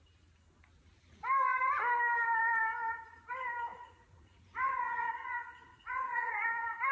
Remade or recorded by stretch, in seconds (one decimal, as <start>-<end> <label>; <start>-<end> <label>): 0.0-3.7 recorded; 3.7-6.5 remade; 6.5-6.9 recorded